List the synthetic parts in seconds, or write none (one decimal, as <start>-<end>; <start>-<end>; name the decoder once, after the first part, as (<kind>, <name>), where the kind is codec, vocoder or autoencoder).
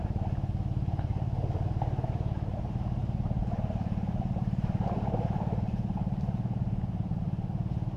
0.0-1.1 (vocoder, BigVGAN v2); 1.7-8.0